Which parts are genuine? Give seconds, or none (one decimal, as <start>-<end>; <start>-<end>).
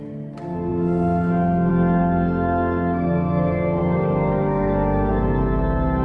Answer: 0.0-3.8; 5.1-6.0